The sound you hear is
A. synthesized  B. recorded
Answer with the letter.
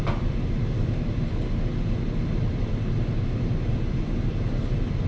B